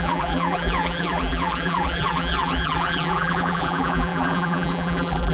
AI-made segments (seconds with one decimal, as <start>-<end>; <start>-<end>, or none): 0.0-5.3